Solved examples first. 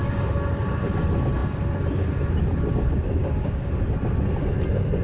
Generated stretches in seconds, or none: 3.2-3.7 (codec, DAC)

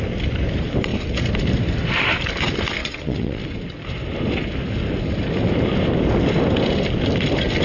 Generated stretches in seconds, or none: 2.8-3.4 (vocoder, WaveNeXt)

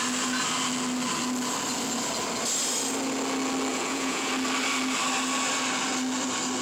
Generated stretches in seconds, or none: 3.7-4.3 (vocoder, Vocos)